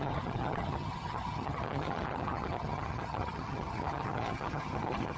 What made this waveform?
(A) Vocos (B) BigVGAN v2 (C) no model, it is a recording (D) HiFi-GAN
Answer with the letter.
D